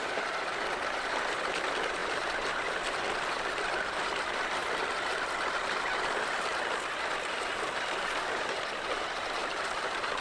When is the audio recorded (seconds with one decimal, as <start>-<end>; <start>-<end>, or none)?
0.0-2.0; 4.0-9.4